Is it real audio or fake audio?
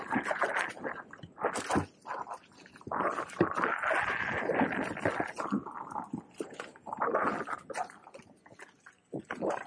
real